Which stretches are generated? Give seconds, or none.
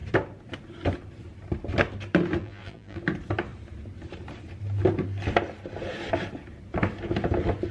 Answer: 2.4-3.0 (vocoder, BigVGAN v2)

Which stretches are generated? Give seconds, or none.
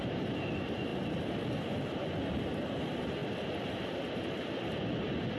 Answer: 3.2-4.8 (vocoder, BigVGAN v2)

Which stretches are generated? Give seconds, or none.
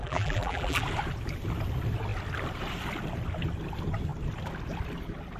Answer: 0.0-0.8 (vocoder, BigVGAN v2)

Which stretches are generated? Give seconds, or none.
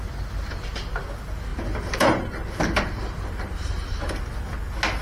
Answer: 1.5-4.2 (vocoder, BigVGAN v2)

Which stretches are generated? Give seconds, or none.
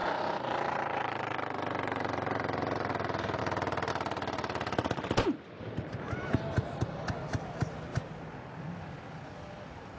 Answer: 0.0-2.9 (vocoder, BigVGAN v2); 3.4-3.9